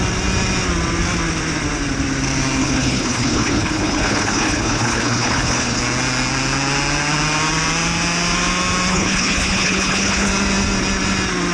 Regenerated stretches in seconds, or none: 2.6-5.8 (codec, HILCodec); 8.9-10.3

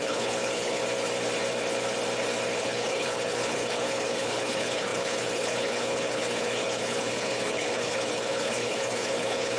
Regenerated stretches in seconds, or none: 0.0-0.8 (codec, HILCodec); 2.6-9.6